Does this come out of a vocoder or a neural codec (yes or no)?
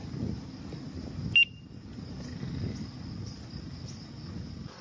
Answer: no